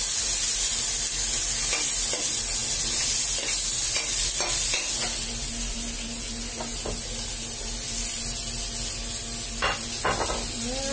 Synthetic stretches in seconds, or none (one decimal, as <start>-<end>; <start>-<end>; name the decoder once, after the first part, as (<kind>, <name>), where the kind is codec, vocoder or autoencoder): none